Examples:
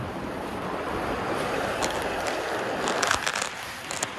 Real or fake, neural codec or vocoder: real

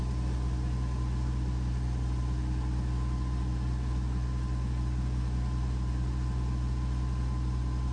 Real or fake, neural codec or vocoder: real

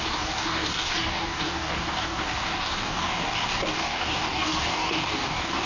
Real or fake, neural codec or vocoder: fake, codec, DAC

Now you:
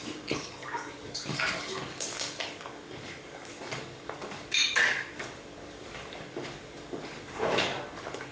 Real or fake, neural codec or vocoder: fake, codec, DAC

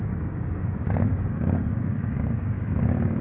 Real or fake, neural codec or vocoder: fake, codec, DAC